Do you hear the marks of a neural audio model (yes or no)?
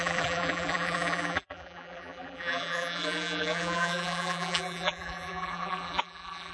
yes